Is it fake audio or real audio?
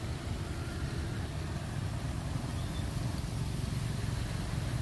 real